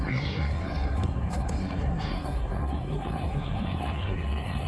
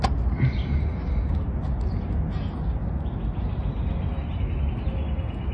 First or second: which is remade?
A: first